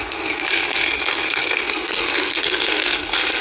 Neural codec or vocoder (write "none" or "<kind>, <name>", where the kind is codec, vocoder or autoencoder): codec, SNAC